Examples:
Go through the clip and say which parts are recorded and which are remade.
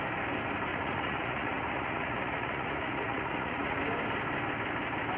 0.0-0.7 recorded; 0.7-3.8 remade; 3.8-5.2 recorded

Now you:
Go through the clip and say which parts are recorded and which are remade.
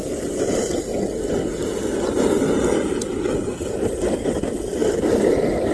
0.0-5.7 recorded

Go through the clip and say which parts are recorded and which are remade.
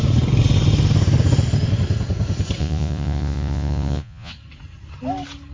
0.0-2.6 recorded; 2.6-4.3 remade; 4.3-5.5 recorded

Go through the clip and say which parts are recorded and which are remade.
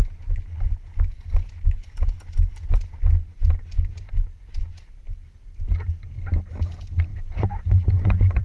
0.0-7.1 recorded; 7.1-8.4 remade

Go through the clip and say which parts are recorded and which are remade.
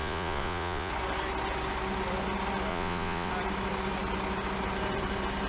0.0-0.9 remade; 0.9-2.7 recorded; 2.7-3.3 remade; 3.3-5.5 recorded